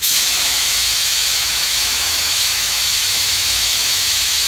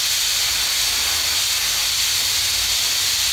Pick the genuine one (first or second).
second